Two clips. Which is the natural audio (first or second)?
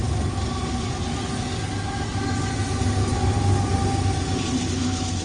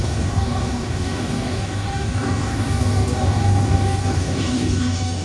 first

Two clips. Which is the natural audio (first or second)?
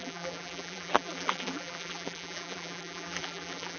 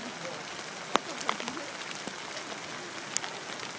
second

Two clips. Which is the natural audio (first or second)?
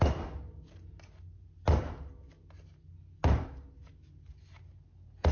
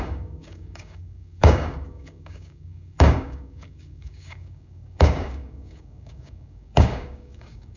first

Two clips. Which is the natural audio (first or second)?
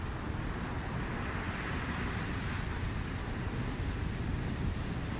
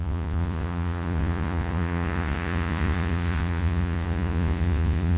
first